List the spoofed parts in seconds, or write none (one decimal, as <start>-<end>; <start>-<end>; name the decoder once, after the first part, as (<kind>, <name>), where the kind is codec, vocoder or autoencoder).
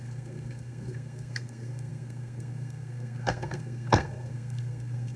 0.0-5.2 (codec, SNAC)